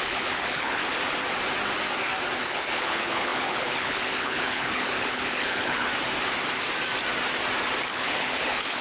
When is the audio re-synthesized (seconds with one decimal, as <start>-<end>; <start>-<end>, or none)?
0.0-0.8; 2.4-5.9; 7.9-8.8